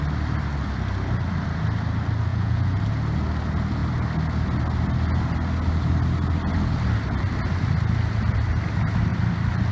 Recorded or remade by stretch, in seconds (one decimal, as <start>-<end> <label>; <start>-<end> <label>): 0.0-2.3 recorded; 2.3-2.8 remade; 2.8-9.7 recorded